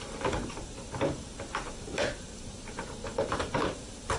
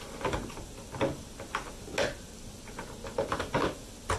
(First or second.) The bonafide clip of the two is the second